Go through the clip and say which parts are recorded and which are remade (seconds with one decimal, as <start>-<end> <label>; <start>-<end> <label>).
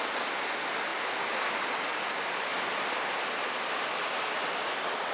0.0-5.1 recorded